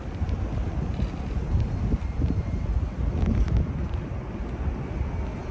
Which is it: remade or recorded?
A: recorded